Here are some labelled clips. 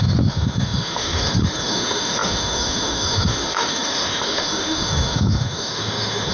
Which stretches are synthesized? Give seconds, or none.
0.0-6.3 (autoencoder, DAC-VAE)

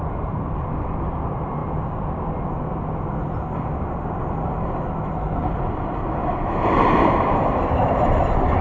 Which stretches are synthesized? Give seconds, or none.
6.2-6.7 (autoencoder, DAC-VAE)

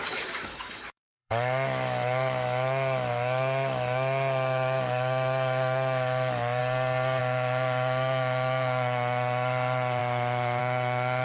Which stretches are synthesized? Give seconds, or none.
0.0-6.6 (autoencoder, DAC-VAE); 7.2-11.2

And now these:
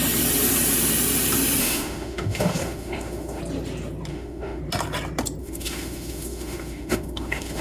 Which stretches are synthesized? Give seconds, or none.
1.6-3.4 (autoencoder, DAC-VAE); 4.1-4.6; 5.4-7.6

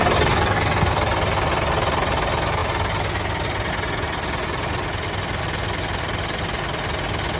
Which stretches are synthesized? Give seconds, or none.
none

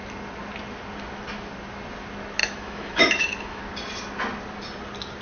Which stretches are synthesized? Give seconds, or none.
2.4-3.6 (autoencoder, DAC-VAE)